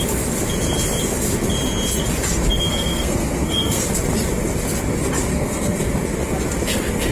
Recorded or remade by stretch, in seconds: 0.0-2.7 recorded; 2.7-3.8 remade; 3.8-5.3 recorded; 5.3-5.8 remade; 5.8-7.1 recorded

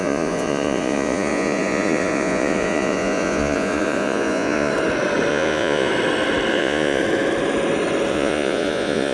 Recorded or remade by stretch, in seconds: 0.0-4.7 remade; 4.7-5.3 recorded; 5.3-5.9 remade; 5.9-6.5 recorded; 6.5-7.0 remade; 7.0-8.1 recorded; 8.1-9.1 remade

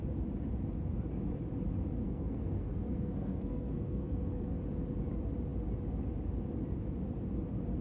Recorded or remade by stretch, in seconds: 0.0-2.0 recorded; 2.0-4.5 remade; 4.5-7.8 recorded